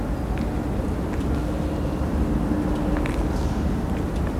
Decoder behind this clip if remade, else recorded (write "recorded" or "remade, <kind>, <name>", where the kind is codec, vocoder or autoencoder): recorded